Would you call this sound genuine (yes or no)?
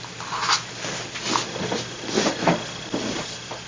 yes